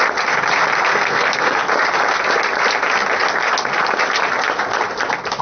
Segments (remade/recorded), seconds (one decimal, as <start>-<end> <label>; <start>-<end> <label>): 0.0-0.9 recorded; 0.9-1.6 remade; 1.6-5.4 recorded